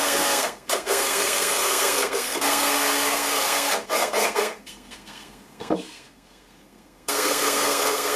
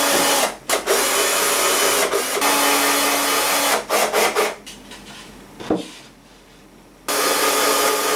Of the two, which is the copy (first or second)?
first